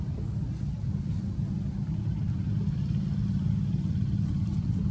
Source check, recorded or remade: recorded